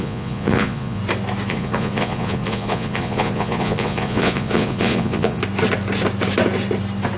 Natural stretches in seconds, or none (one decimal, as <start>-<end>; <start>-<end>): 1.0-1.5; 5.4-7.2